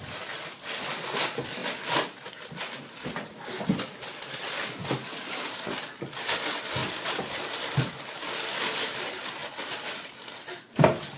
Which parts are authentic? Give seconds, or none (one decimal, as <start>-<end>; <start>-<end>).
0.0-11.2